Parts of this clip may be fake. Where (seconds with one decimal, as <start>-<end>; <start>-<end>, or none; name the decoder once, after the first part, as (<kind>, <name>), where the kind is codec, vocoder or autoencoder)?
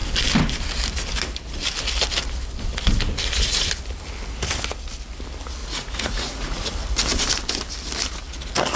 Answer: 5.6-6.7 (vocoder, Vocos)